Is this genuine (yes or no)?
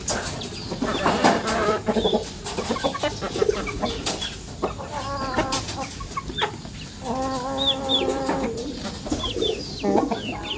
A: yes